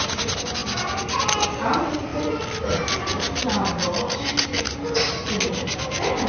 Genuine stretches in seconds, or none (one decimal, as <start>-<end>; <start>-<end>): 0.0-6.3